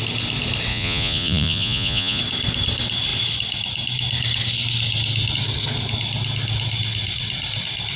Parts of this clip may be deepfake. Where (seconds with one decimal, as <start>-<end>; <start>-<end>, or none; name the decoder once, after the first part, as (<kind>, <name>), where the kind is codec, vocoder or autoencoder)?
0.7-2.2 (vocoder, Vocos)